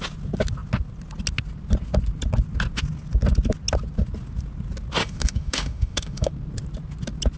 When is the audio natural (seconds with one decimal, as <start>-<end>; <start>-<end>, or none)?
0.0-5.0; 6.3-7.4